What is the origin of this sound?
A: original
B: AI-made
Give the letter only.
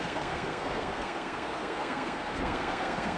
B